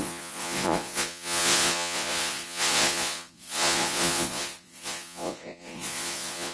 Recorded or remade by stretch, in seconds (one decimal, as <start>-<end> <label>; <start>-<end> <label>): 0.0-6.5 remade